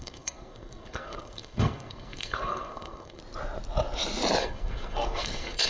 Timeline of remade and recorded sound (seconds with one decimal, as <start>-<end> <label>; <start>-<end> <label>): 0.0-3.2 remade; 3.2-4.4 recorded; 4.4-5.7 remade